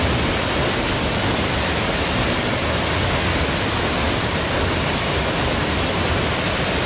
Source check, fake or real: real